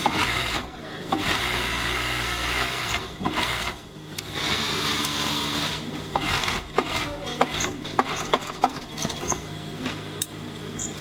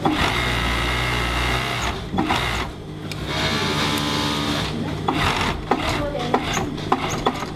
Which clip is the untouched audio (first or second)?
second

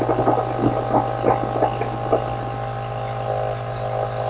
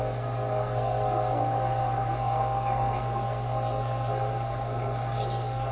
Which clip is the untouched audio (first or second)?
first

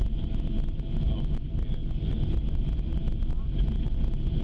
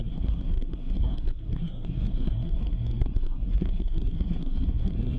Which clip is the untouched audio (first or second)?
first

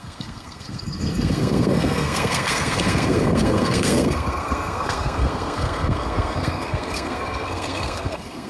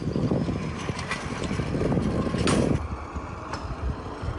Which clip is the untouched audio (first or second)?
second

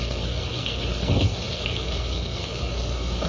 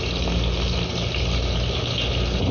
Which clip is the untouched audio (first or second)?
second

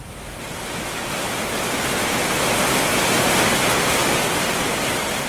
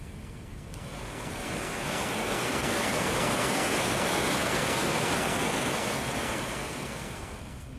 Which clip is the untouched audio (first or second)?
first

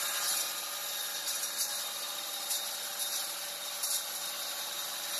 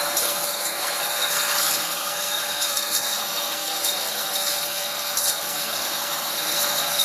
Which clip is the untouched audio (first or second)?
first